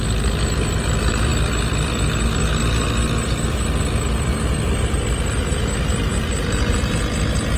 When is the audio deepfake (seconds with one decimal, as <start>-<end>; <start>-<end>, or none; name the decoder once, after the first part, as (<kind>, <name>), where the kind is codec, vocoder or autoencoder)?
6.1-7.0 (vocoder, BigVGAN v2)